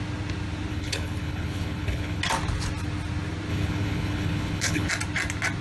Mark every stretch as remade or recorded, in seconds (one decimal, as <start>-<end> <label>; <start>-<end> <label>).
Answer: 0.0-0.7 recorded; 0.7-2.2 remade; 2.2-3.5 recorded; 3.5-4.9 remade; 4.9-5.6 recorded

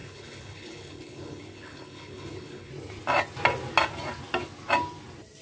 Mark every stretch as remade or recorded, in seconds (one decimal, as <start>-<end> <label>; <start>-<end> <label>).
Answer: 0.0-2.7 remade; 2.7-5.4 recorded

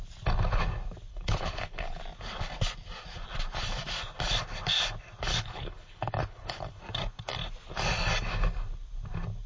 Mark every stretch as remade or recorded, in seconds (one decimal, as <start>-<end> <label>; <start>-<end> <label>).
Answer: 0.0-1.1 recorded; 1.1-2.0 remade; 2.0-5.3 recorded; 5.3-6.8 remade; 6.8-9.5 recorded

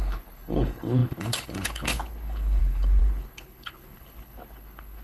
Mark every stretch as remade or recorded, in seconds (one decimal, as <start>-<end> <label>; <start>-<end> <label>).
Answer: 0.0-5.0 remade

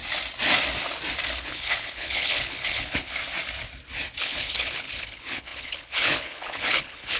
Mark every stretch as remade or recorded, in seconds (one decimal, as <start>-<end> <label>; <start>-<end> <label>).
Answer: 0.0-1.4 recorded; 1.4-3.2 remade; 3.2-4.2 recorded; 4.2-7.2 remade

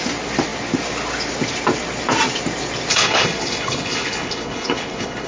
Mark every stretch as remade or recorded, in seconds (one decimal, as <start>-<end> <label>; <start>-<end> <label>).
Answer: 0.0-2.9 recorded; 2.9-5.3 remade